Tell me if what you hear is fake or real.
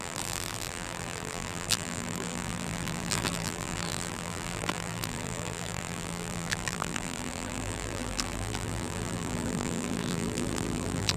fake